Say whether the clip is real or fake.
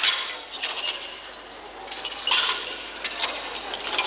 real